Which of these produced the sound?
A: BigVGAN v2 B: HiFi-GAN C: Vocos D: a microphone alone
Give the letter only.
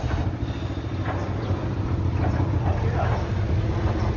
D